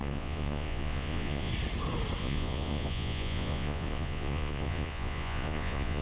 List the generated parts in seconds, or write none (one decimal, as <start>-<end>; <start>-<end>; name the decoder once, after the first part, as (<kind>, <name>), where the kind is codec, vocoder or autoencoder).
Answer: 0.0-1.5 (vocoder, Vocos); 2.2-6.0